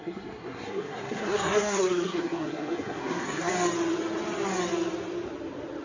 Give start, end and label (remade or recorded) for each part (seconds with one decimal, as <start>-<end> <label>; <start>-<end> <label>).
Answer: 0.0-3.5 remade; 3.5-5.8 recorded